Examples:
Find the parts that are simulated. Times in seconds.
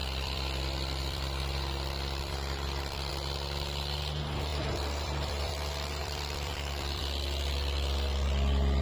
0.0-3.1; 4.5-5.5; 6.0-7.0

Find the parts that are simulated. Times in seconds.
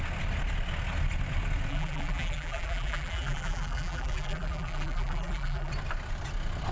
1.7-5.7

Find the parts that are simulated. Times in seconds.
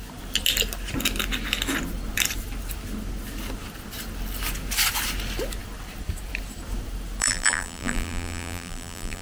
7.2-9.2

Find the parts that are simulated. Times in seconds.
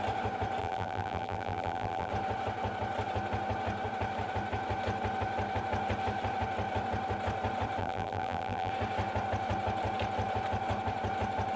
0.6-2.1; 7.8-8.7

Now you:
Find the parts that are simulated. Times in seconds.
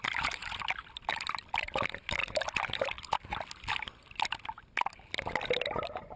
0.0-0.4; 1.1-2.2